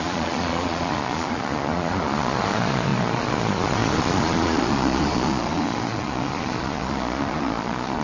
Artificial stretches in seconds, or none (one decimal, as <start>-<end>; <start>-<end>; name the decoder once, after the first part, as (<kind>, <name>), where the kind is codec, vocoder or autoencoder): 0.0-8.0 (vocoder, Vocos)